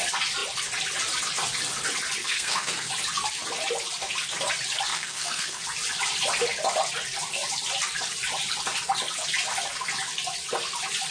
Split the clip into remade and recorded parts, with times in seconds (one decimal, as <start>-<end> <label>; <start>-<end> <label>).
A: 0.0-2.2 recorded; 2.2-2.9 remade; 2.9-4.9 recorded; 4.9-5.6 remade; 5.6-11.1 recorded

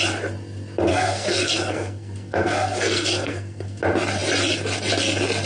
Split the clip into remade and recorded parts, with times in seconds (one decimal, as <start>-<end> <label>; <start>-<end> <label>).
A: 0.0-0.9 recorded; 0.9-3.8 remade; 3.8-5.5 recorded

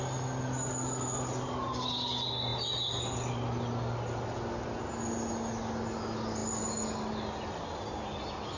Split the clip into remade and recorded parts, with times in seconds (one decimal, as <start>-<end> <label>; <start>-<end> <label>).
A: 0.0-8.6 recorded